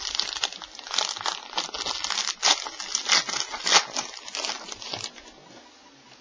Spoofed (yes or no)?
no